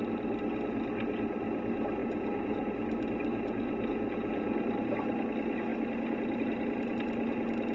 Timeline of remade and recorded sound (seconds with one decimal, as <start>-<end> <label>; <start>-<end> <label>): 0.0-2.0 recorded; 2.0-2.7 remade; 2.7-3.3 recorded; 3.3-4.6 remade; 4.6-7.7 recorded